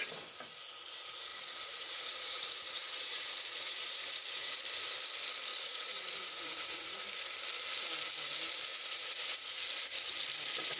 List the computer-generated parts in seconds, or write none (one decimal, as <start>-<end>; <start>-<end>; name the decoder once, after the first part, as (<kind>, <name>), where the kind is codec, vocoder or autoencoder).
1.3-4.6 (vocoder, Vocos); 5.5-7.0; 8.7-9.6